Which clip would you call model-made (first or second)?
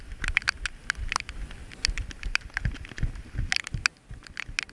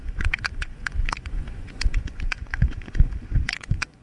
second